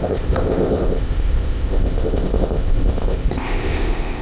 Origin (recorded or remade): remade